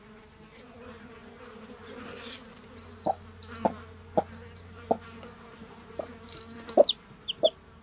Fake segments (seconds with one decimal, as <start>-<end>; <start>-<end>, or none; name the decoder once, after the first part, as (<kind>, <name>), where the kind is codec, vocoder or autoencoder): none